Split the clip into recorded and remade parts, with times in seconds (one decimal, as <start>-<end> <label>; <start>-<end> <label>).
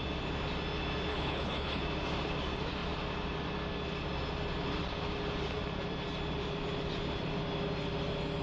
0.0-1.1 recorded; 1.1-1.8 remade; 1.8-8.4 recorded